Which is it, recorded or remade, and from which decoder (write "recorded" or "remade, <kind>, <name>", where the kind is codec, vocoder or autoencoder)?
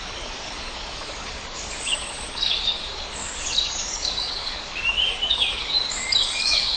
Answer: remade, codec, DAC